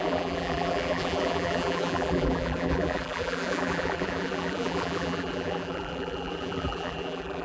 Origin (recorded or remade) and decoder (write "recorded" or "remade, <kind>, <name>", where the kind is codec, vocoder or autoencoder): remade, vocoder, BigVGAN v2